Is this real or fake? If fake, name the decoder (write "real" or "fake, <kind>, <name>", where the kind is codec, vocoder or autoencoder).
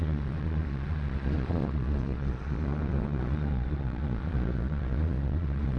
fake, vocoder, Vocos